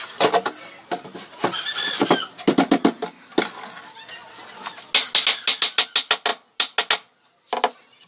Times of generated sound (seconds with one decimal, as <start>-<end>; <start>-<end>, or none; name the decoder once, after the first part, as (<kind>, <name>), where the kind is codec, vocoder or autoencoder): none